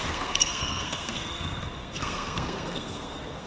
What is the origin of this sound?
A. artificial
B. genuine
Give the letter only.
A